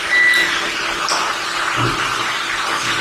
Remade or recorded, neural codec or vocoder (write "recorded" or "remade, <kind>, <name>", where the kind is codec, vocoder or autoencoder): recorded